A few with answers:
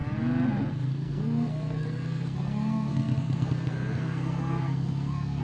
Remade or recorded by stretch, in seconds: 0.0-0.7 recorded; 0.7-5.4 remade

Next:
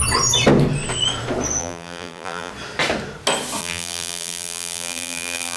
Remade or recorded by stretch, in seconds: 0.0-1.6 recorded; 1.6-2.5 remade; 2.5-3.6 recorded; 3.6-5.6 remade